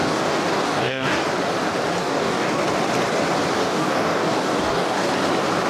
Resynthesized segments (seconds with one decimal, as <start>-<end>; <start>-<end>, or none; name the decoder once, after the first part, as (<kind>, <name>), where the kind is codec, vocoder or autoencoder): 0.0-1.2 (codec, DAC); 2.0-2.6; 3.6-5.1